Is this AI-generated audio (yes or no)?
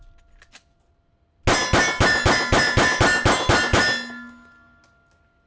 no